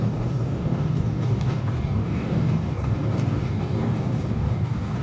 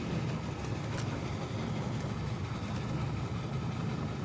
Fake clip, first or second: first